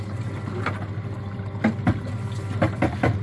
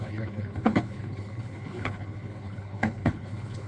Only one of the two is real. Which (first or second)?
first